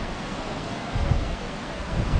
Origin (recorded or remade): remade